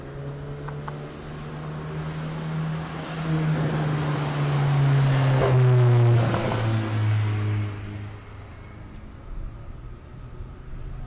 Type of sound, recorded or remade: recorded